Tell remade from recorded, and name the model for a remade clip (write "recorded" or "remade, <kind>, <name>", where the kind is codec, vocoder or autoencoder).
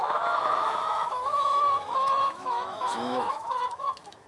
remade, autoencoder, DAC-VAE